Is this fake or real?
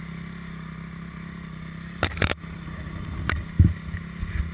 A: real